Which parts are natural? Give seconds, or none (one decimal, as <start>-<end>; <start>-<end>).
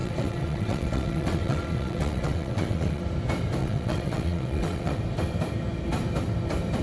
3.0-3.6; 5.0-6.8